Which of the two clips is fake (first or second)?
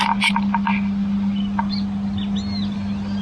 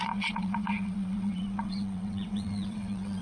second